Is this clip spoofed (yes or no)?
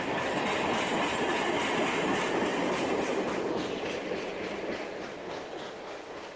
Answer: no